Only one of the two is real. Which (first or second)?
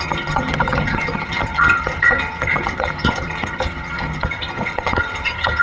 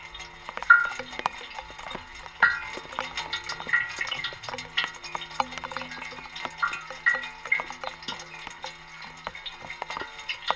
second